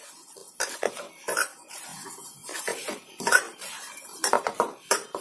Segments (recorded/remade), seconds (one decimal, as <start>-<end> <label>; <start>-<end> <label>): 0.0-1.9 recorded; 1.9-5.2 remade